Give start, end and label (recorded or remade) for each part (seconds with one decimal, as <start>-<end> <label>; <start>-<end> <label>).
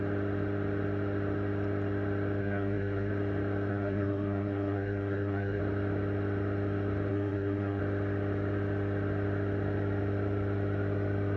0.0-2.4 recorded; 2.4-3.1 remade; 3.1-3.7 recorded; 3.7-5.6 remade; 5.6-7.1 recorded; 7.1-7.8 remade; 7.8-11.4 recorded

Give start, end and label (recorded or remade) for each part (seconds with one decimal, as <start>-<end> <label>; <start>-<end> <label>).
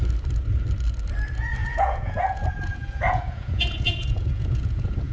0.0-1.6 recorded; 1.6-5.1 remade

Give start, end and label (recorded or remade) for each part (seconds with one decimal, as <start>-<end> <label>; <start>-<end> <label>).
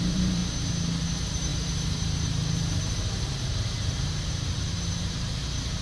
0.0-0.4 remade; 0.4-1.0 recorded; 1.0-5.8 remade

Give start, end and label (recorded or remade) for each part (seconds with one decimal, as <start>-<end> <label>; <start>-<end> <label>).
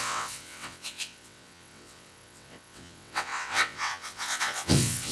0.0-5.1 remade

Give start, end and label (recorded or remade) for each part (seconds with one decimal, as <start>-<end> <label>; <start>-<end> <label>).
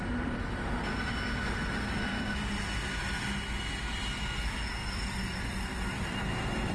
0.0-2.1 recorded; 2.1-2.6 remade; 2.6-4.8 recorded; 4.8-6.7 remade